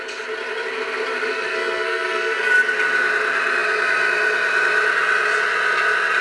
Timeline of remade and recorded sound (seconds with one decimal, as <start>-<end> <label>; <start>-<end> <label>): 0.0-1.3 recorded; 1.3-2.5 remade; 2.5-6.2 recorded